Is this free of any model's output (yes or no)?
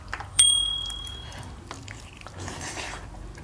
no